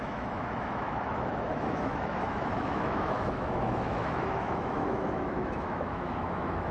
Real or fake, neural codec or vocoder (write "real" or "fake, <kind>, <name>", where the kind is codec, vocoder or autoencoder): fake, autoencoder, DAC-VAE